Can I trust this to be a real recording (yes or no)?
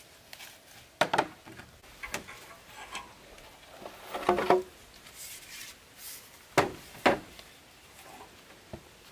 yes